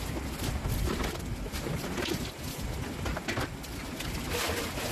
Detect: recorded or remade recorded